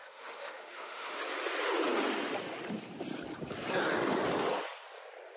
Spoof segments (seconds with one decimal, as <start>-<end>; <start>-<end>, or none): 0.0-1.2